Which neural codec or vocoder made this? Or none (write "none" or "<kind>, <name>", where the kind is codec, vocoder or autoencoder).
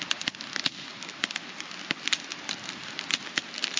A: none